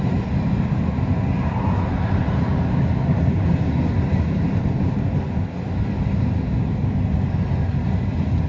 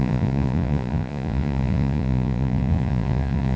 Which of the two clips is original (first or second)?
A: first